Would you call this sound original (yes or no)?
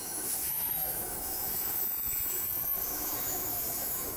no